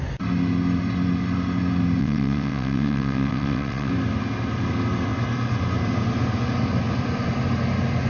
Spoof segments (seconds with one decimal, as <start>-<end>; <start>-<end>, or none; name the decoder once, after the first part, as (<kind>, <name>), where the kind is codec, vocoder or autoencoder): 2.0-3.9 (vocoder, WaveNeXt)